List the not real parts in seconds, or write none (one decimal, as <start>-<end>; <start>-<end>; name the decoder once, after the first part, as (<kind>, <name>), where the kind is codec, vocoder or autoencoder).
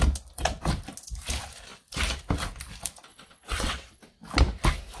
3.1-4.0 (vocoder, WaveNeXt)